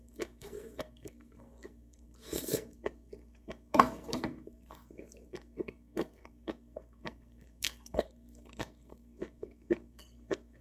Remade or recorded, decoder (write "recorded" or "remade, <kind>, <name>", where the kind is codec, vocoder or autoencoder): remade, codec, SNAC